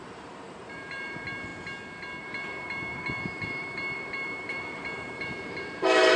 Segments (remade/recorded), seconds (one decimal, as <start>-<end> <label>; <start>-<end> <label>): 0.0-1.5 remade; 1.5-2.2 recorded; 2.2-6.2 remade